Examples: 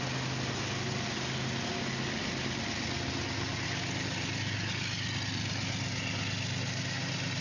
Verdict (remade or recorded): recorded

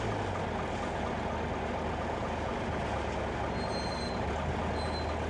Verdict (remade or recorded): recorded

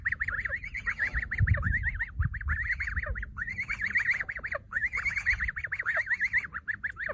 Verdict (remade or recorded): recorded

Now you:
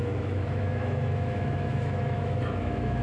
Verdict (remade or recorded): remade